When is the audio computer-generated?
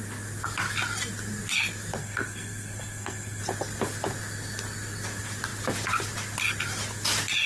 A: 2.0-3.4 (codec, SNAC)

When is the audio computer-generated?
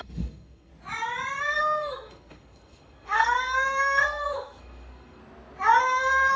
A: 0.0-0.7 (codec, SNAC); 1.4-5.2; 5.8-6.4